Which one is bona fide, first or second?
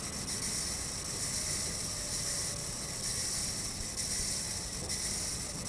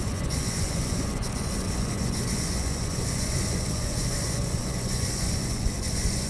first